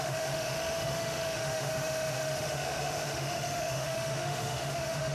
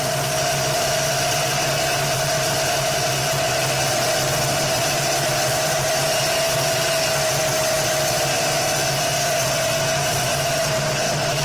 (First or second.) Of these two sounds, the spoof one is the first